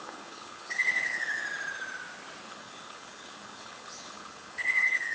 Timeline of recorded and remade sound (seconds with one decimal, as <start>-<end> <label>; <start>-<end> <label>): 0.0-1.4 remade; 1.4-2.4 recorded; 2.4-5.1 remade